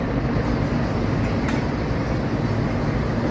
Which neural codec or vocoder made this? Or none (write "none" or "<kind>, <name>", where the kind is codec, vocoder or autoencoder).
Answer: none